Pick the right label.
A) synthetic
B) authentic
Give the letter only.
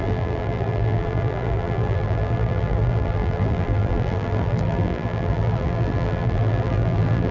A